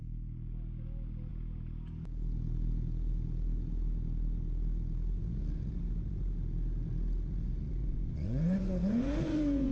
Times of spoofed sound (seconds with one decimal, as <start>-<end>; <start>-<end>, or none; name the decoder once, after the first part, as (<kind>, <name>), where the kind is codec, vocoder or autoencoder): 7.8-9.7 (vocoder, Vocos)